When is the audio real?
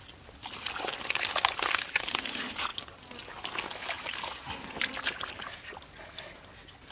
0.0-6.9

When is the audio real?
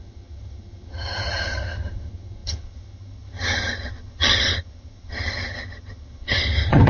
none